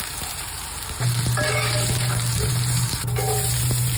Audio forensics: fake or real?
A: fake